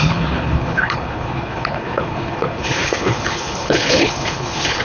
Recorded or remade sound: remade